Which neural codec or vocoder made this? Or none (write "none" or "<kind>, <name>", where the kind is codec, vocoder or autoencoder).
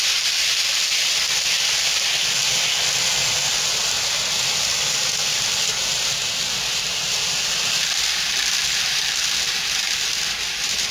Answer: none